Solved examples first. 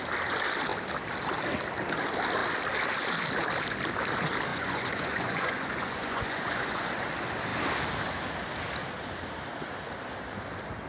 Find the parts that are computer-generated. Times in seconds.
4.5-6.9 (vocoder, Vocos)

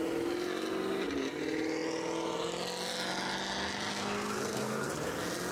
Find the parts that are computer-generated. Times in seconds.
3.9-4.9 (codec, SNAC)

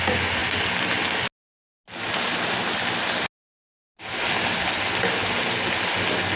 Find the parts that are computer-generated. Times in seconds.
none

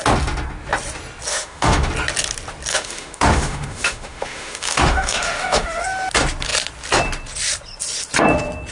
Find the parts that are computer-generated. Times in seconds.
1.3-1.9 (autoencoder, DAC-VAE); 2.7-5.8

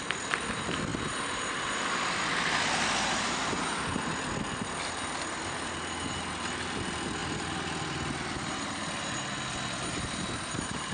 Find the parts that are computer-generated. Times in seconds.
7.2-8.7 (vocoder, BigVGAN v2)